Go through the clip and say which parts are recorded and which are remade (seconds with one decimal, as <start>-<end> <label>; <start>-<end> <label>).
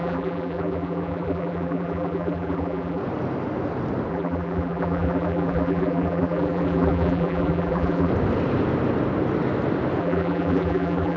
0.0-3.0 remade; 3.0-4.1 recorded; 4.1-8.1 remade; 8.1-10.0 recorded; 10.0-11.2 remade